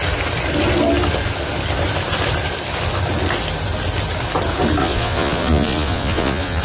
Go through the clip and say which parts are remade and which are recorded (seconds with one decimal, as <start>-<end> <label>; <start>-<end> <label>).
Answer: 0.0-4.8 recorded; 4.8-6.6 remade